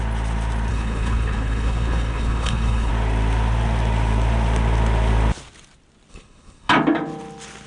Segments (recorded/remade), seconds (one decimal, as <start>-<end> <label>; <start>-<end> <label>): 0.0-0.7 recorded; 0.7-2.9 remade; 2.9-6.1 recorded; 6.1-6.7 remade; 6.7-7.7 recorded